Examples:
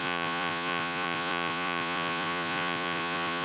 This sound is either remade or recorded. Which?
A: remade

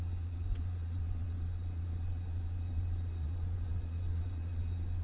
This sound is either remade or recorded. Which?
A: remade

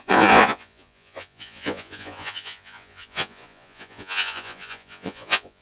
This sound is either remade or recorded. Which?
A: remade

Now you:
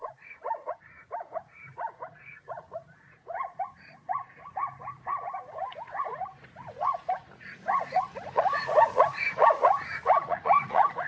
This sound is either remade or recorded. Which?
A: remade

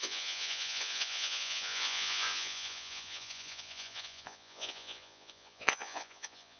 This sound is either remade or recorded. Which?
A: remade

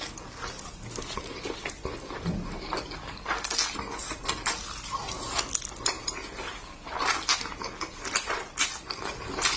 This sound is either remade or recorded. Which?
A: recorded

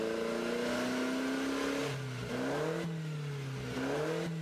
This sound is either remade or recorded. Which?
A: recorded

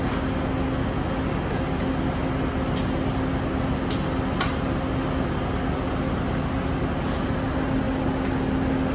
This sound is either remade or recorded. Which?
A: recorded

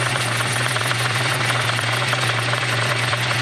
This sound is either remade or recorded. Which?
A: remade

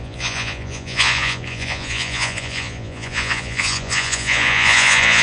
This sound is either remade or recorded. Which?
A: remade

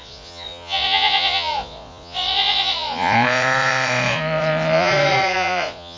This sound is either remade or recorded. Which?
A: remade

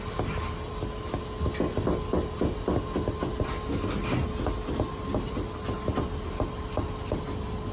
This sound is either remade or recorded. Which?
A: recorded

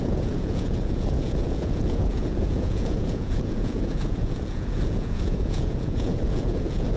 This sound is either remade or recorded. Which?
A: remade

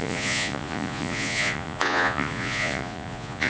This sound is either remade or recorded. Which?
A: remade